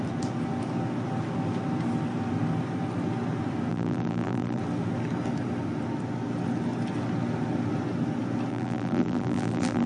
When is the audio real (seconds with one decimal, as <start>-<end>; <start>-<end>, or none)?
0.0-3.7; 4.6-8.5